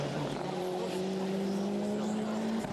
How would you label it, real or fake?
real